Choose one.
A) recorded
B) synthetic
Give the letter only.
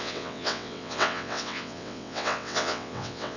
B